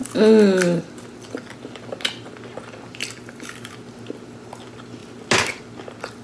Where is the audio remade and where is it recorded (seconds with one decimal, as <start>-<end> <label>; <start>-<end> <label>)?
0.0-6.2 recorded